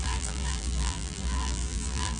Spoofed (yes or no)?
yes